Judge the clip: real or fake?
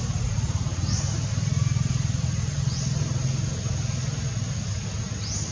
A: real